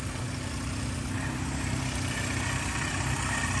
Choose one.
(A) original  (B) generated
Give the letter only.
A